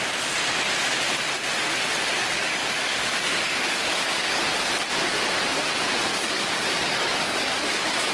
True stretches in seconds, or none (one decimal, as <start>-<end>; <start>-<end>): 0.0-2.1; 4.4-6.1